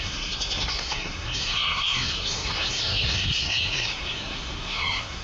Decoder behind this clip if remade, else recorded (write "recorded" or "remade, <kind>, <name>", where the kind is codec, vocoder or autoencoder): remade, codec, SNAC